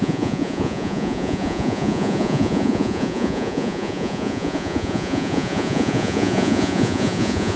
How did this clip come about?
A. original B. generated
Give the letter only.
B